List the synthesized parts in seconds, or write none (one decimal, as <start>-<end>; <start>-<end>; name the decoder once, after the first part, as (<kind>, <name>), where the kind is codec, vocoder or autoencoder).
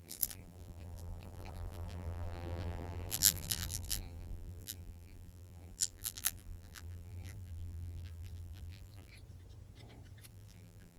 0.0-9.1 (vocoder, BigVGAN v2); 10.3-11.0